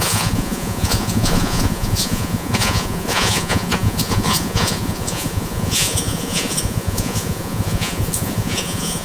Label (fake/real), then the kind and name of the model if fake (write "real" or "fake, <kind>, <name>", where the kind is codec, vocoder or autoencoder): fake, vocoder, Vocos